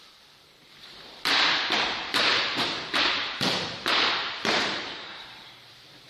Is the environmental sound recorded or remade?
remade